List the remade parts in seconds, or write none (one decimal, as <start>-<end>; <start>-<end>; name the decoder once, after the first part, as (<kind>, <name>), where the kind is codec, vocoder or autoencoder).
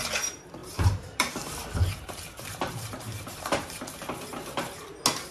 0.6-3.8 (vocoder, BigVGAN v2); 4.3-4.8